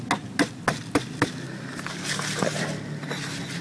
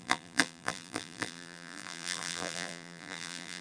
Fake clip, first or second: second